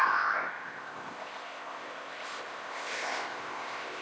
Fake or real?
fake